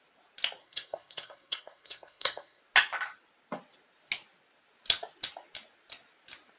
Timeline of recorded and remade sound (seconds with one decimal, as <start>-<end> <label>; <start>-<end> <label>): 0.0-0.6 recorded; 0.6-2.6 remade; 2.6-6.6 recorded